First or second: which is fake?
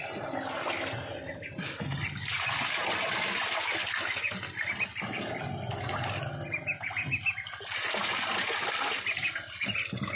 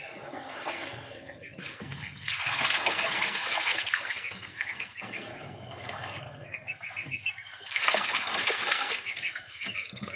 second